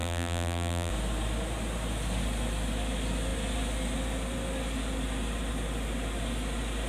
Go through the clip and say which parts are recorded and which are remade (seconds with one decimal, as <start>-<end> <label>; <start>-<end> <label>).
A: 0.0-0.9 remade; 0.9-6.9 recorded